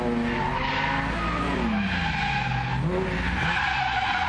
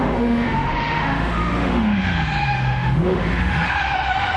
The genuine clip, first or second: first